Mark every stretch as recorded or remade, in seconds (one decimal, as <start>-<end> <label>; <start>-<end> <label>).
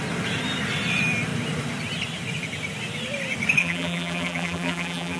0.0-3.6 recorded; 3.6-5.2 remade